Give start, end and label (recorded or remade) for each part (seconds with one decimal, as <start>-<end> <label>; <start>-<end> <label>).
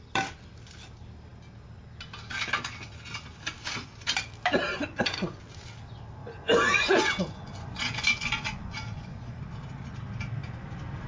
0.0-4.7 recorded; 4.7-5.4 remade; 5.4-6.2 recorded; 6.2-9.4 remade; 9.4-11.1 recorded